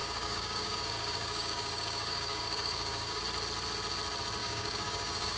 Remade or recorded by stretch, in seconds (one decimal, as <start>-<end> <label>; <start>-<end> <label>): 0.0-3.2 remade; 3.2-4.4 recorded; 4.4-5.4 remade